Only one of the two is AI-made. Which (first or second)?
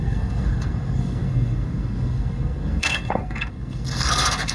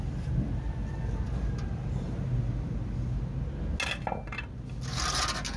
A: first